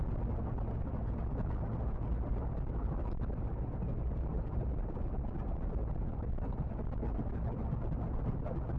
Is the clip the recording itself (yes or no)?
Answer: yes